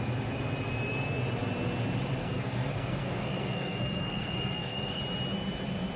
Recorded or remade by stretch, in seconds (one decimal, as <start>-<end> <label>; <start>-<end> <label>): 0.0-2.2 recorded; 2.2-5.0 remade; 5.0-6.0 recorded